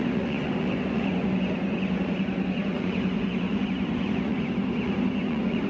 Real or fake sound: fake